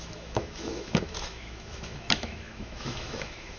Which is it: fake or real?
fake